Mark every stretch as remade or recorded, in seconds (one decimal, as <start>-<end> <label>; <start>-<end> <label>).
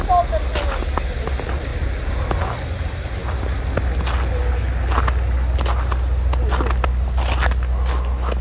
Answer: 0.0-8.4 recorded